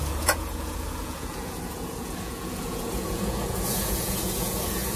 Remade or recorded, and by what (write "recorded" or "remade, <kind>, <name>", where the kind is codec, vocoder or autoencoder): remade, vocoder, Vocos